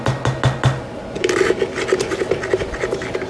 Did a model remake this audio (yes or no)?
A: no